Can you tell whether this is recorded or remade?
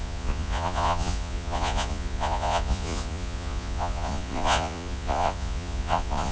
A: remade